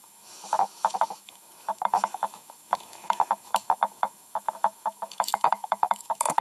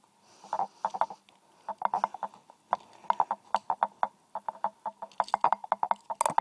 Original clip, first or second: second